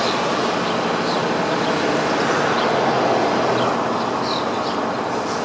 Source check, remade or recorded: recorded